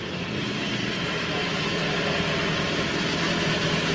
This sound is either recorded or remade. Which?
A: remade